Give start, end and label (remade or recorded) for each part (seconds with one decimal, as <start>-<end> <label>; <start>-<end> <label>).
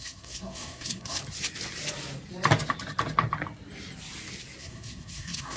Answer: 0.0-1.2 remade; 1.2-4.6 recorded; 4.6-5.6 remade